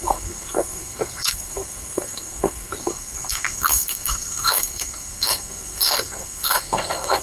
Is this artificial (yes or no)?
yes